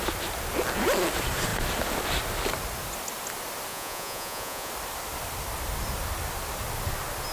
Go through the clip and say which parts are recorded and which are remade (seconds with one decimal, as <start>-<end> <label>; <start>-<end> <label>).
0.0-3.7 recorded; 3.7-4.7 remade; 4.7-7.3 recorded